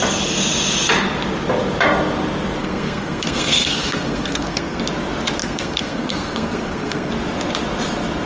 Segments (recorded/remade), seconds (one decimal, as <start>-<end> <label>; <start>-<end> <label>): 0.0-2.6 recorded; 2.6-4.8 remade; 4.8-5.4 recorded; 5.4-7.1 remade; 7.1-8.3 recorded